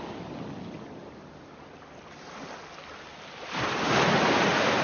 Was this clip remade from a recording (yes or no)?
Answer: no